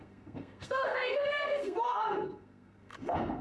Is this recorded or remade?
remade